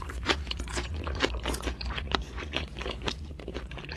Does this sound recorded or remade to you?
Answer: remade